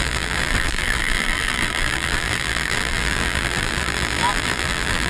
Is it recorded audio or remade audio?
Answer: remade